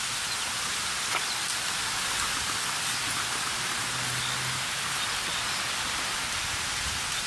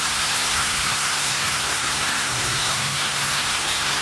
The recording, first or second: first